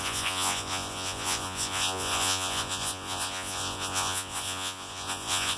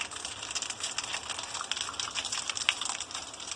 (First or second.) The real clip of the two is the second